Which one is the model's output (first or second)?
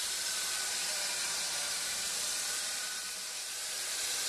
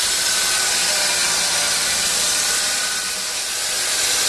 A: first